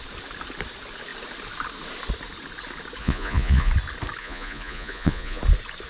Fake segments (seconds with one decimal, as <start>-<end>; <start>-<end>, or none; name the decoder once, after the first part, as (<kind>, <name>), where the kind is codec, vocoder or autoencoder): 3.0-3.7 (vocoder, Vocos); 4.2-5.4